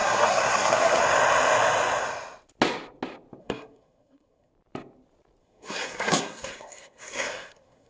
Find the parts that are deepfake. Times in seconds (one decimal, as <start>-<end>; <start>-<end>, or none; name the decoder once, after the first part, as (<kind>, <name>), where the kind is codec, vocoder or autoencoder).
0.0-1.0 (codec, SNAC); 3.4-4.5; 5.4-7.9